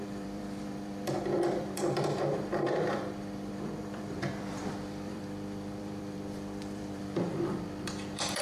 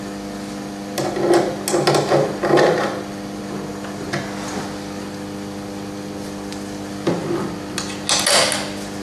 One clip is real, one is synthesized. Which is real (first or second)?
second